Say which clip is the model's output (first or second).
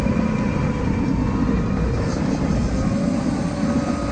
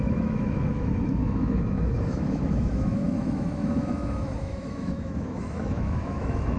second